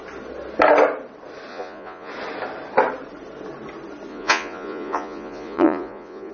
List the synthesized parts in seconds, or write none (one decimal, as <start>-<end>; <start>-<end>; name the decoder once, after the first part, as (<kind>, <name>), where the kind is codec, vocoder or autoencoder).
1.5-2.1 (vocoder, Vocos); 4.1-6.3